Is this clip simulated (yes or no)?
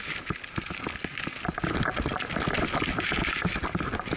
no